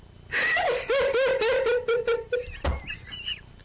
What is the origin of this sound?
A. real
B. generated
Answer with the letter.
A